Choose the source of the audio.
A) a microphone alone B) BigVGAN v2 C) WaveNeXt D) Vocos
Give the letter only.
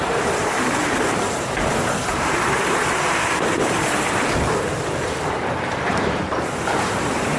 B